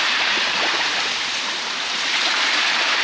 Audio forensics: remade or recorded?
remade